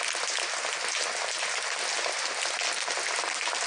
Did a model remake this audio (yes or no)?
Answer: no